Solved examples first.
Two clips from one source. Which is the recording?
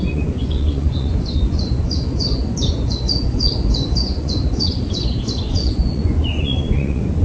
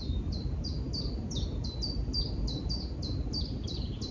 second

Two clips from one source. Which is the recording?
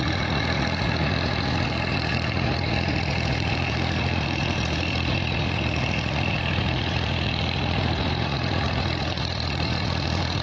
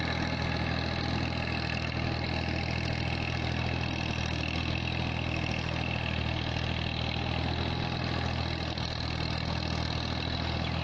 second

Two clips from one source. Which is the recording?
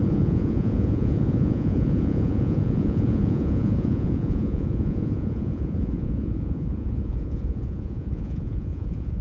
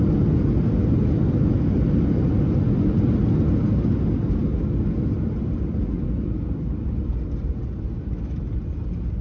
second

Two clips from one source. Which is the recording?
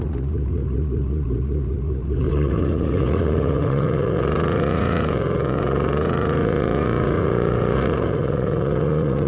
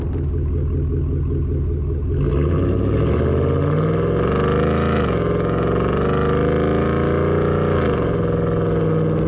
second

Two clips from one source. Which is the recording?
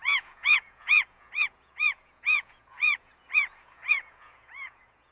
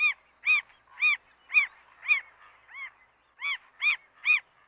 second